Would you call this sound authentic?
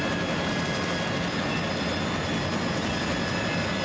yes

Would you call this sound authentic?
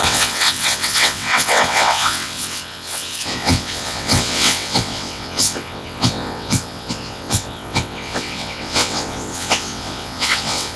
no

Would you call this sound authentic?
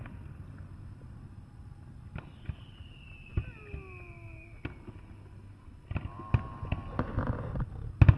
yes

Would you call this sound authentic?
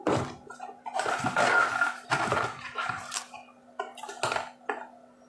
yes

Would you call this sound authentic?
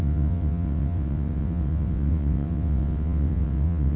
no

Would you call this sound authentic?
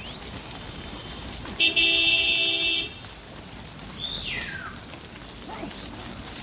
yes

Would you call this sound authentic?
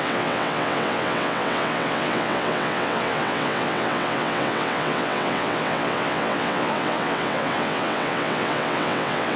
no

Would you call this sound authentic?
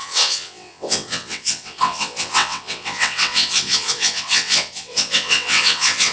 no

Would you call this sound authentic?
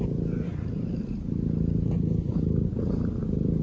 yes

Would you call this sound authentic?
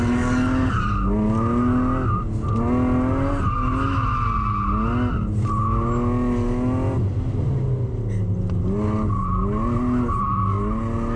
yes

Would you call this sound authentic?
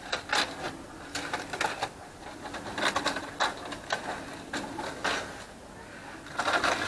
yes